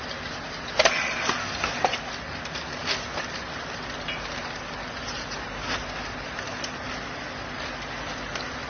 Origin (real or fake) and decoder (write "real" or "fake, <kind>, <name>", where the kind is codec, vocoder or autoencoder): real